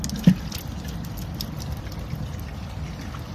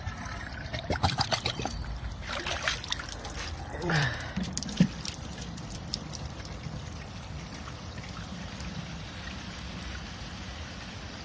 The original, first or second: first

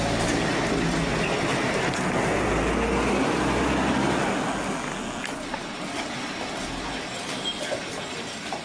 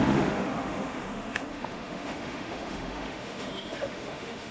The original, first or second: first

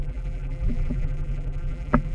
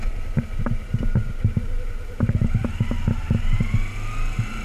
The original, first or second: second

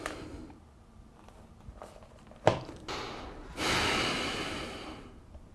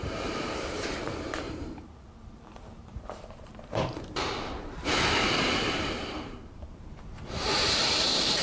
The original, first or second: first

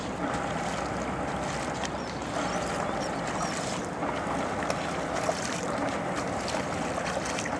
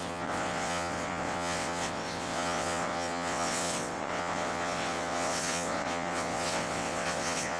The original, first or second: first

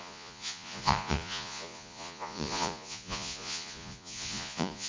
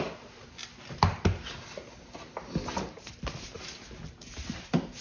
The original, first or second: second